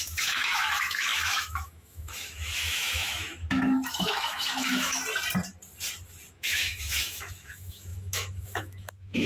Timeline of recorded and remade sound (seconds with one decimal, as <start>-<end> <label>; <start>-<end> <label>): 0.0-5.0 remade; 5.0-6.3 recorded; 6.3-9.3 remade